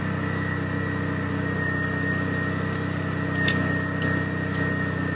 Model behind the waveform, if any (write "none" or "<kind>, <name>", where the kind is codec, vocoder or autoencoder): none